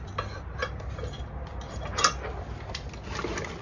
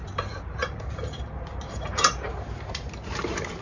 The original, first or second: first